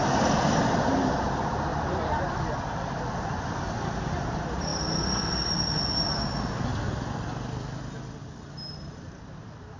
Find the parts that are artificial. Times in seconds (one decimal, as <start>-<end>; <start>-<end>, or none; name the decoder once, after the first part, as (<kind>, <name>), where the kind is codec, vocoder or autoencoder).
none